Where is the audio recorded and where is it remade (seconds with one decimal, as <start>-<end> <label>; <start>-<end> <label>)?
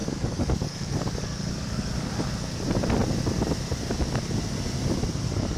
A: 0.0-2.1 remade; 2.1-5.6 recorded